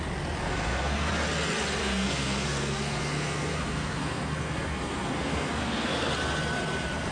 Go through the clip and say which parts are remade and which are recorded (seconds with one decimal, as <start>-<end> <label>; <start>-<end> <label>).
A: 0.0-0.4 recorded; 0.4-1.1 remade; 1.1-1.8 recorded; 1.8-6.1 remade; 6.1-7.1 recorded

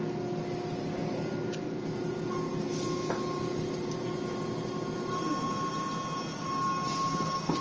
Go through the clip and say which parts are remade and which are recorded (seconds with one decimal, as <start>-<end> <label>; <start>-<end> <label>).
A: 0.0-7.6 recorded

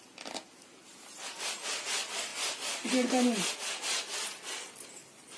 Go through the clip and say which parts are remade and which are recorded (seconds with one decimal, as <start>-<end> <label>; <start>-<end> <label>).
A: 0.0-5.4 recorded

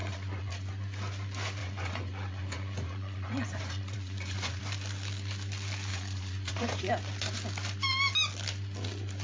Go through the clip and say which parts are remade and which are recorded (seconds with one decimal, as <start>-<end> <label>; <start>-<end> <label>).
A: 0.0-0.7 remade; 0.7-1.6 recorded; 1.6-4.6 remade; 4.6-5.9 recorded; 5.9-6.9 remade; 6.9-9.2 recorded

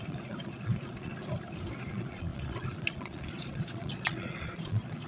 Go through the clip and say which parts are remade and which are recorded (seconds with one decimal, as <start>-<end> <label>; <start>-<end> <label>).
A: 0.0-1.1 remade; 1.1-1.9 recorded; 1.9-5.1 remade

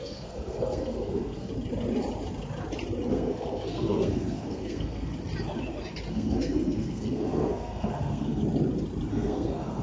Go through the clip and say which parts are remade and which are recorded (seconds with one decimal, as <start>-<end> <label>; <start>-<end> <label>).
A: 0.0-1.5 remade; 1.5-3.1 recorded; 3.1-5.1 remade; 5.1-6.1 recorded; 6.1-8.4 remade; 8.4-9.1 recorded; 9.1-9.8 remade

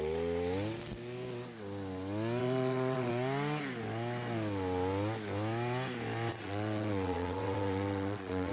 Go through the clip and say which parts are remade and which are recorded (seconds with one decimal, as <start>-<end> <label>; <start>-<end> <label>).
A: 0.0-2.4 recorded; 2.4-3.1 remade; 3.1-6.3 recorded; 6.3-8.5 remade

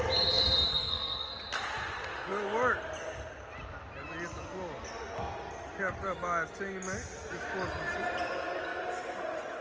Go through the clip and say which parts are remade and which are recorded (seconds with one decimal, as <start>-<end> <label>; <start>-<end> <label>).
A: 0.0-0.7 recorded; 0.7-1.3 remade; 1.3-9.6 recorded